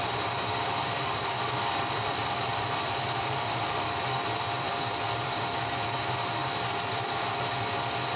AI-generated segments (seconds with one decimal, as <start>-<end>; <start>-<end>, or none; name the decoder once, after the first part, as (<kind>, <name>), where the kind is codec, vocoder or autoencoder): 0.7-5.6 (vocoder, BigVGAN v2)